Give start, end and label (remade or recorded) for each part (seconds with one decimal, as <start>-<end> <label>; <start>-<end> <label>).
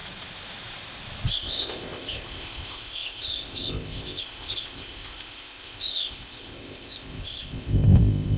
0.0-1.3 recorded; 1.3-8.4 remade